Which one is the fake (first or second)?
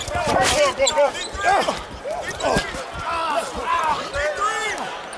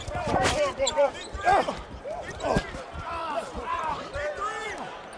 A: second